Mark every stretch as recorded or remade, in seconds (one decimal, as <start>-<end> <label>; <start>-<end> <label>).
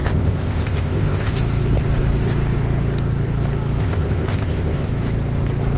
0.0-1.3 remade; 1.3-3.8 recorded; 3.8-4.9 remade; 4.9-5.8 recorded